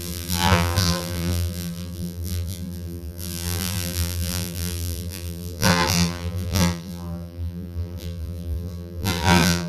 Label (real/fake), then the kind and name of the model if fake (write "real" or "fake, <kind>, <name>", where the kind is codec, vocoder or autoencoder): fake, vocoder, BigVGAN v2